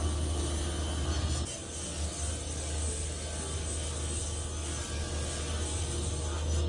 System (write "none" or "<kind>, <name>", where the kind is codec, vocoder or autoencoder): none